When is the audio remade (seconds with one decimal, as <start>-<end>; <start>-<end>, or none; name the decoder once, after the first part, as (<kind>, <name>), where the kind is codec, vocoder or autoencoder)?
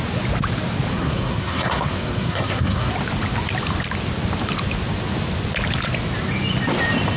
0.9-2.9 (codec, SNAC)